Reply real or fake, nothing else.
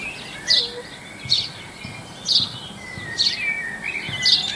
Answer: real